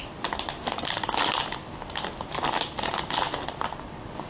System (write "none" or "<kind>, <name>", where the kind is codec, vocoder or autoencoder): none